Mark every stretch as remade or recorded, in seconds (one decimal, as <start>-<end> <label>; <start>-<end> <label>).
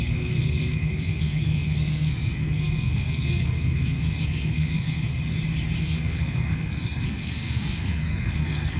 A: 0.0-5.1 remade; 5.1-5.8 recorded; 5.8-8.8 remade